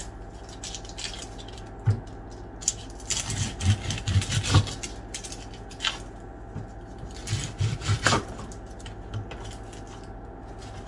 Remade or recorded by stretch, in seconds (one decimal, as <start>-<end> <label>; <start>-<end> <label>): 0.0-10.9 recorded